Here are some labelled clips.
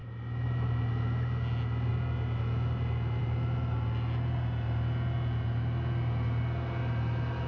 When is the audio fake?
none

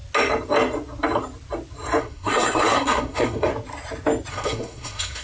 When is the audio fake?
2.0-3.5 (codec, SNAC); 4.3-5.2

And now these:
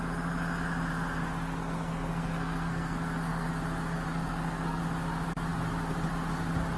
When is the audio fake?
1.6-3.5 (codec, SNAC); 4.1-4.8

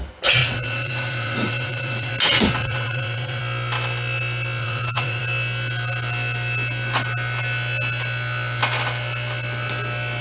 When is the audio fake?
0.4-2.1 (vocoder, WaveNeXt); 2.6-3.4; 4.6-5.2

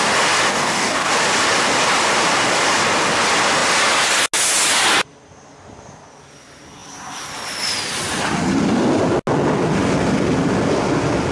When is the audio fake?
0.5-1.1 (codec, DAC)

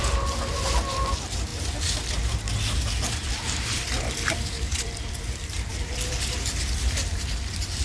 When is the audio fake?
1.5-2.5 (vocoder, BigVGAN v2); 3.2-7.8

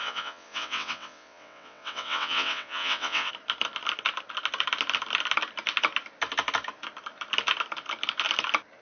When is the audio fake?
0.0-3.3 (vocoder, WaveNeXt)

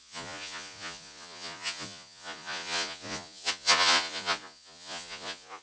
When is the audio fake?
0.0-5.6 (vocoder, Vocos)